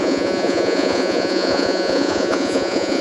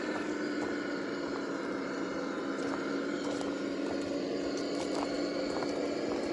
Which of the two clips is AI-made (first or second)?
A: first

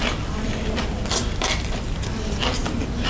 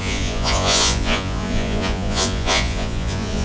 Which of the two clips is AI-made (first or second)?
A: second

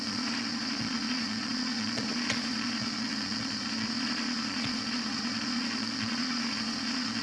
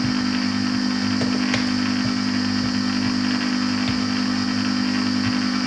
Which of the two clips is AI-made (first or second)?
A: first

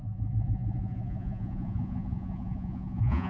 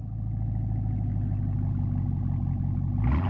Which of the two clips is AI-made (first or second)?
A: first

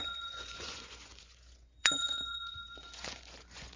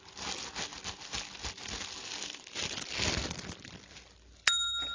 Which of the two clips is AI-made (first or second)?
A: first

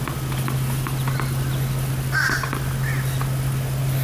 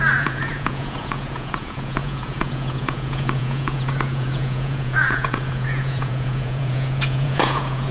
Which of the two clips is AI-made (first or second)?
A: second